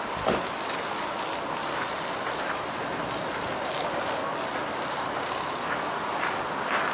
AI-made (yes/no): no